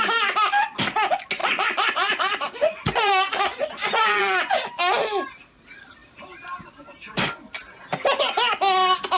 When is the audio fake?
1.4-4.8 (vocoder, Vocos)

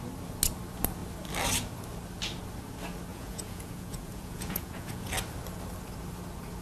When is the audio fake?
3.1-5.1 (vocoder, Vocos)

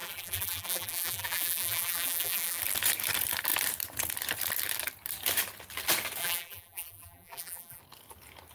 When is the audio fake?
0.0-2.6 (vocoder, BigVGAN v2); 6.2-7.8